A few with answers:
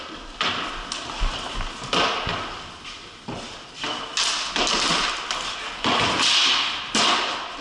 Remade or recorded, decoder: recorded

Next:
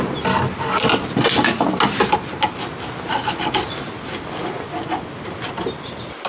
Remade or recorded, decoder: recorded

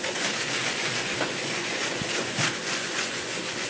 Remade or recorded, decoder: remade, vocoder, Vocos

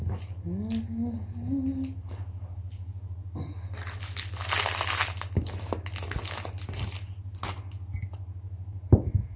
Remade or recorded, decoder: recorded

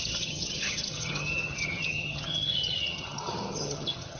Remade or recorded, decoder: remade, vocoder, HiFi-GAN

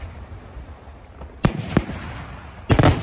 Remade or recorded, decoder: recorded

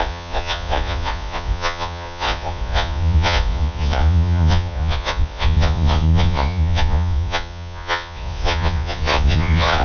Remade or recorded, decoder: remade, vocoder, Vocos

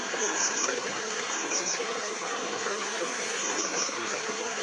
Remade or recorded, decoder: remade, codec, SNAC